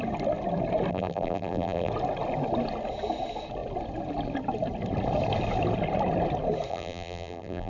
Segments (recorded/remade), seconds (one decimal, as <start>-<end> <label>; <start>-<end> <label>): 0.0-0.9 recorded; 0.9-1.9 remade; 1.9-6.7 recorded; 6.7-7.7 remade